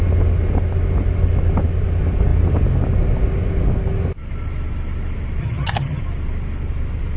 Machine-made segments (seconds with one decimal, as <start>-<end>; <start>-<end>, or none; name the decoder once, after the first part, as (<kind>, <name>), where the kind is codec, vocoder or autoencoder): 5.4-6.0 (vocoder, HiFi-GAN)